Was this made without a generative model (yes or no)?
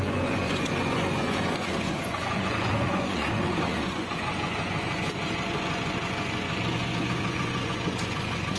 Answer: no